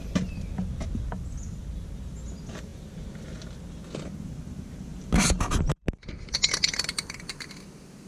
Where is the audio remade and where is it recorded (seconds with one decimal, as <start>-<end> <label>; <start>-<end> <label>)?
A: 0.0-8.1 recorded